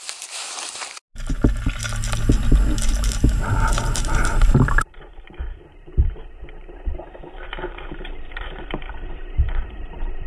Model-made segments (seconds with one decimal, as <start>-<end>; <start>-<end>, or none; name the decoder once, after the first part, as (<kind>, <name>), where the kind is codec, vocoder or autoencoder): 0.0-1.0 (vocoder, BigVGAN v2); 3.3-10.3